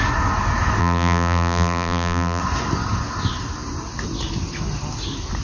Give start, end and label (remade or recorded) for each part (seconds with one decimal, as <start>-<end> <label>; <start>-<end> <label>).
0.0-0.8 recorded; 0.8-2.4 remade; 2.4-5.4 recorded